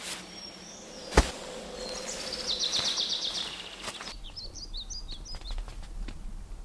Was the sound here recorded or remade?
recorded